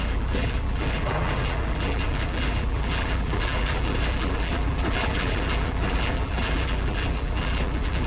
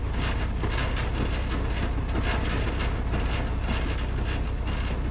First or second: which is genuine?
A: second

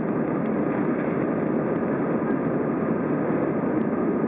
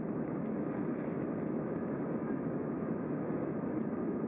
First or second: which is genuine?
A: first